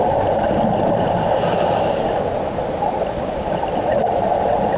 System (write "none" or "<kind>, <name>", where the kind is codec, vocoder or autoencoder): vocoder, BigVGAN v2